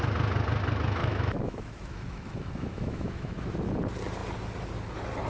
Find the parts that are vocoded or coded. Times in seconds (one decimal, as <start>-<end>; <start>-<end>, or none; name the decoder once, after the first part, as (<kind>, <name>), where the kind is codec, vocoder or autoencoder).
1.0-3.5 (autoencoder, DAC-VAE)